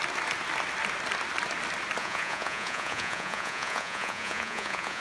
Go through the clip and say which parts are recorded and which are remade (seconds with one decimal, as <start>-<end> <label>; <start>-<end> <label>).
0.0-2.0 recorded; 2.0-5.0 remade